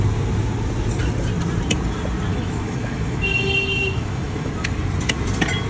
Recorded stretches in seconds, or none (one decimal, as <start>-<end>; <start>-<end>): 0.0-2.3; 3.2-3.7; 4.5-5.7